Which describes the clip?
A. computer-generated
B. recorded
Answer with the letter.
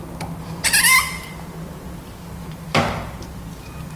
B